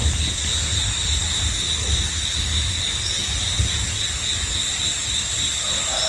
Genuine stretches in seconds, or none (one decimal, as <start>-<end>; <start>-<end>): 0.0-6.1